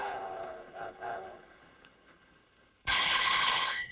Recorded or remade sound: remade